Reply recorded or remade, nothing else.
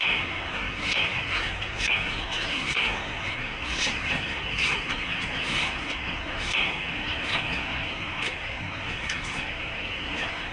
remade